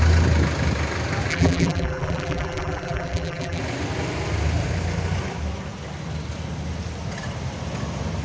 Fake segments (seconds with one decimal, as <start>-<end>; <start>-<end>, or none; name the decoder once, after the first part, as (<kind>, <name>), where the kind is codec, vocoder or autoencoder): 1.3-3.6 (vocoder, BigVGAN v2)